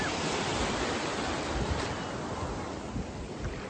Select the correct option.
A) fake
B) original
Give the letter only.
B